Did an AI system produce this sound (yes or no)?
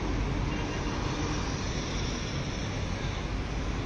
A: no